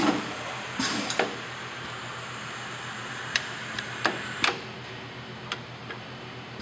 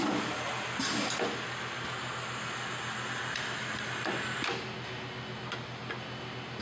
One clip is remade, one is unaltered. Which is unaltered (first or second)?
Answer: second